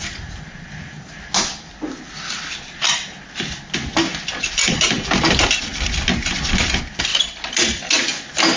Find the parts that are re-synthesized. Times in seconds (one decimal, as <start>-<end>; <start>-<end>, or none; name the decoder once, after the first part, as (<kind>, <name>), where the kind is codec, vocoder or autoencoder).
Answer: none